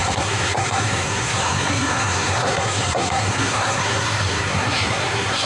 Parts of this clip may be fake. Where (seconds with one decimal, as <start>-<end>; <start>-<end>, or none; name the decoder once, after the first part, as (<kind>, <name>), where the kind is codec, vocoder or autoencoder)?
0.0-5.5 (codec, SNAC)